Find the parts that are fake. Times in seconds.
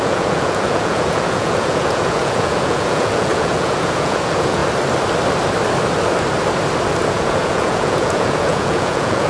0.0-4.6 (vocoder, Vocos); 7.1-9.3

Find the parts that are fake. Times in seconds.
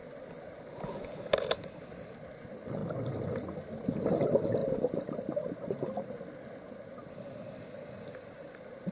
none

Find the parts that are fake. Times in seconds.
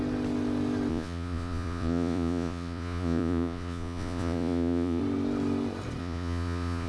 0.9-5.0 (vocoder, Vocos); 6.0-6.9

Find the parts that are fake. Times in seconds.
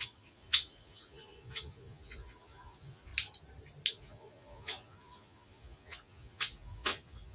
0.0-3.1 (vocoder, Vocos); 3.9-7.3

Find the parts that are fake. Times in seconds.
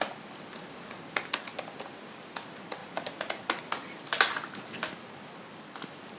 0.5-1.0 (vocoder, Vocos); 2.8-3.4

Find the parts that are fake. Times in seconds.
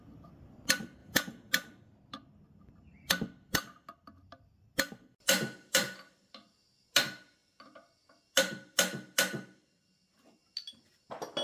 1.0-1.5 (vocoder, Vocos)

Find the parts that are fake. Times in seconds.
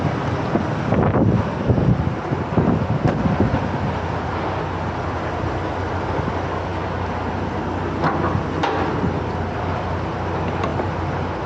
none